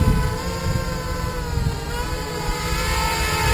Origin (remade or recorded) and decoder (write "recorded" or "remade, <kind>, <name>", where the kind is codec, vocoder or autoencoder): recorded